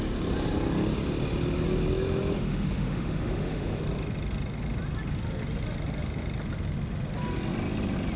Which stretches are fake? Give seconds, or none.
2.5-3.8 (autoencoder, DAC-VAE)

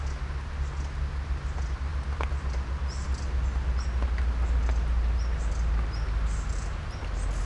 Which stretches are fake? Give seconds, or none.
none

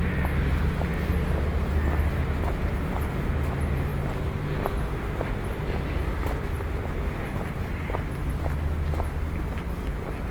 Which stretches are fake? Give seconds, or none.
none

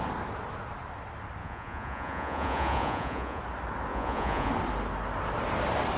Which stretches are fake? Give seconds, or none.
1.4-3.4 (vocoder, Vocos); 3.9-4.5

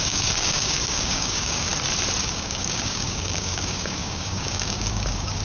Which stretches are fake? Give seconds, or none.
0.0-1.7 (codec, DAC); 2.2-5.4

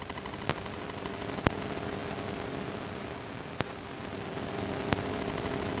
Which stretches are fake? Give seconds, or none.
none

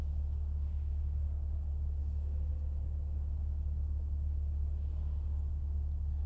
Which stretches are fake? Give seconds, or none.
2.0-2.5 (autoencoder, DAC-VAE)